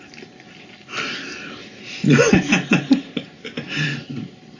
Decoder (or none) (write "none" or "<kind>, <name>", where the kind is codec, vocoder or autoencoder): none